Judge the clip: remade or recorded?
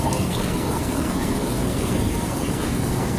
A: remade